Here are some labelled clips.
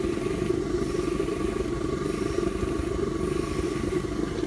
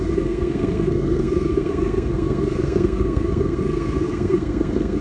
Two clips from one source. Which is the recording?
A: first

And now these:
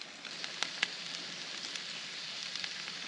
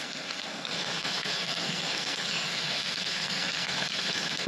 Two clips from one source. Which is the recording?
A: first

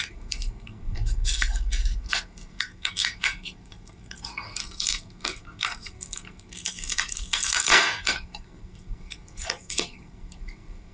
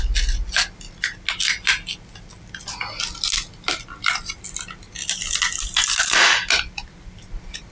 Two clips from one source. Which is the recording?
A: second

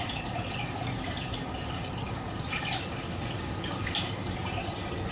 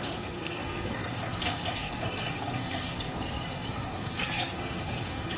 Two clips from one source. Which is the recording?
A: first